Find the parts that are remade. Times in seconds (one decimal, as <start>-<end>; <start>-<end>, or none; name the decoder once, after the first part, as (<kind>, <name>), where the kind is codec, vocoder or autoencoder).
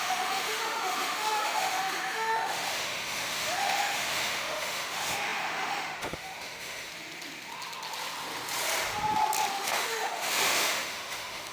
0.0-6.9 (autoencoder, DAC-VAE); 9.5-11.5